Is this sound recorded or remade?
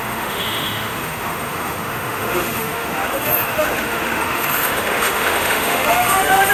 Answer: remade